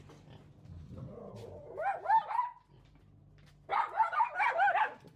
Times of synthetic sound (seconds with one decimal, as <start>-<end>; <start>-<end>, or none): none